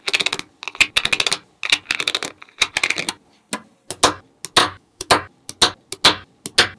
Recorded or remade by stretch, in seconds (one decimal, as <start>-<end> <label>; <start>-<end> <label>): 0.0-4.6 recorded; 4.6-5.1 remade; 5.1-6.8 recorded